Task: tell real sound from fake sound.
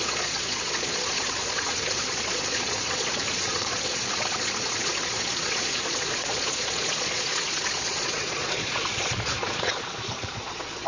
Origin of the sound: fake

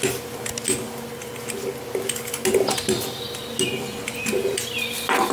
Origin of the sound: real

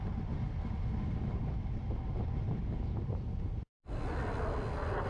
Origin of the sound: real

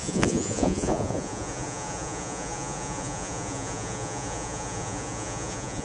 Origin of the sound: fake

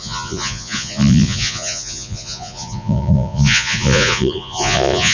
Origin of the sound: fake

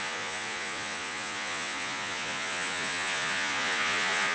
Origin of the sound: fake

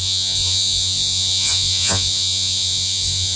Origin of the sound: fake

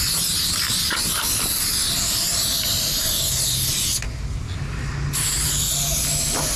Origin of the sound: real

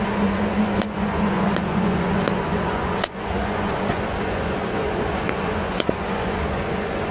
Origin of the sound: fake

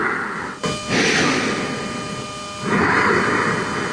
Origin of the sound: real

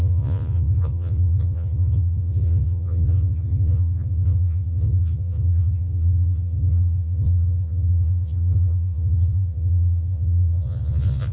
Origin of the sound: fake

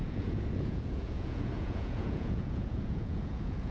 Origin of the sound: fake